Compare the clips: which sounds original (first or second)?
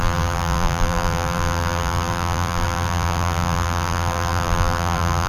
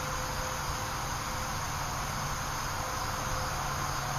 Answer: second